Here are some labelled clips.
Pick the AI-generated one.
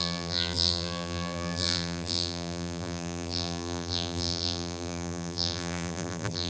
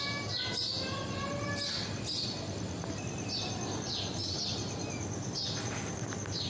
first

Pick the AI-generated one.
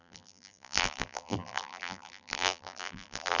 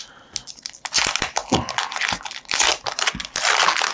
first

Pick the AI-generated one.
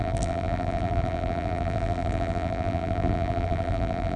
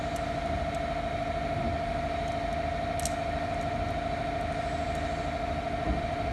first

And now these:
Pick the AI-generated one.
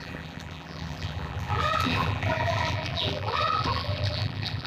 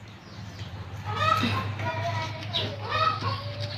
first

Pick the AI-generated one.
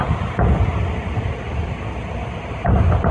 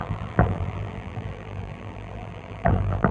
second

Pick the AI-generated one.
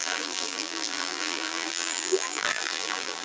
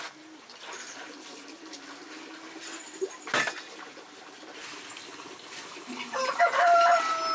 first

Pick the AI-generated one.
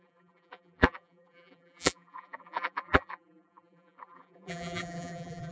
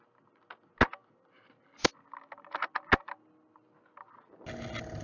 first